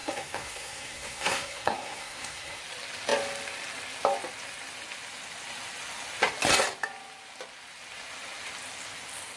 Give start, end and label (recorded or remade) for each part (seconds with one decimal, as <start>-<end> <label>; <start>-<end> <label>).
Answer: 0.0-2.6 remade; 2.6-9.4 recorded